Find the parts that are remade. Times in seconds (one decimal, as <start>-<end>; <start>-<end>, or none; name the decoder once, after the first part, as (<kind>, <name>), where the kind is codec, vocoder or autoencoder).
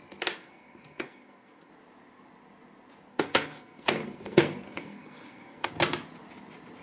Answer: 0.4-1.7 (codec, SNAC); 3.1-5.7